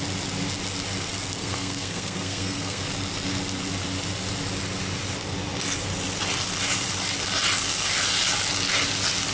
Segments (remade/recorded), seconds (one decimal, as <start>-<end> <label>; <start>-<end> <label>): 0.0-1.4 recorded; 1.4-2.8 remade; 2.8-9.3 recorded